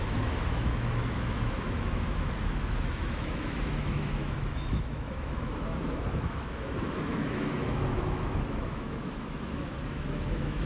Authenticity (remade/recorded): remade